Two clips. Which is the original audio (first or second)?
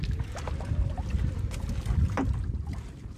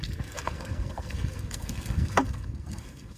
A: first